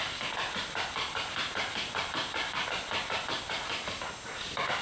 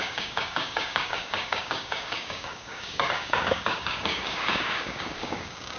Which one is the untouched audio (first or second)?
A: first